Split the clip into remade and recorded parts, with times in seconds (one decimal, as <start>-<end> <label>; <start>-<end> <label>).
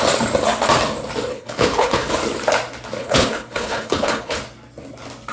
0.0-1.3 recorded; 1.3-2.1 remade; 2.1-3.0 recorded; 3.0-4.4 remade; 4.4-5.3 recorded